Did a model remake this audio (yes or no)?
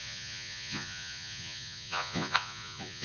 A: yes